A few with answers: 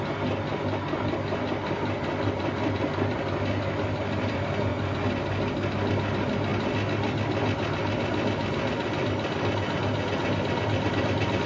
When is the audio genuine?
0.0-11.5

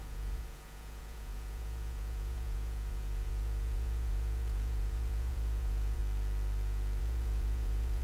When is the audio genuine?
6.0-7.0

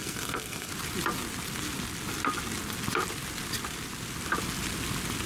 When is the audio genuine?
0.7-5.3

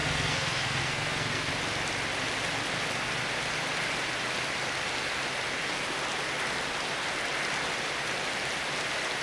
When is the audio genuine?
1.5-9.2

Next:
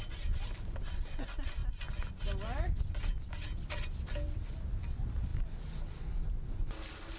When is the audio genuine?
0.0-7.2

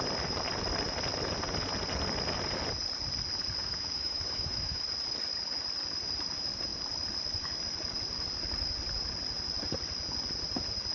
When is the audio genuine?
0.0-3.6; 4.8-10.9